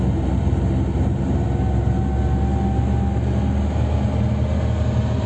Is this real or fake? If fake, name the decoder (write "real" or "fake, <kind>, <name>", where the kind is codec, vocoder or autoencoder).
real